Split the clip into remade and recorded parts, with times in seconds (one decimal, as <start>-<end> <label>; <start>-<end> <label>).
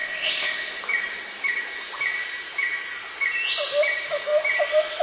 0.0-0.8 remade; 0.8-5.0 recorded